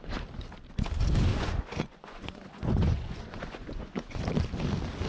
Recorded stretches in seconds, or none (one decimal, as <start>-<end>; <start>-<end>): 0.0-1.3; 4.2-5.1